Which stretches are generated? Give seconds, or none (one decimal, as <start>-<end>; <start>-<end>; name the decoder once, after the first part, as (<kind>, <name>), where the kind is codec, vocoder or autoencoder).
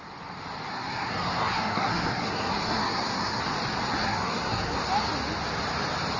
0.7-3.4 (codec, SNAC); 3.9-4.8